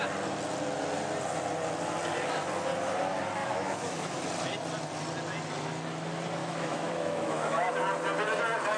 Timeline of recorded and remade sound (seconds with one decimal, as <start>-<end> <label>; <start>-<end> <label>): 0.0-3.4 recorded; 3.4-4.2 remade; 4.2-6.4 recorded; 6.4-7.7 remade; 7.7-8.8 recorded